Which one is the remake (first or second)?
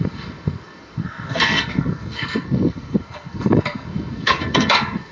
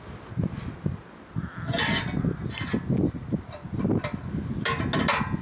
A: first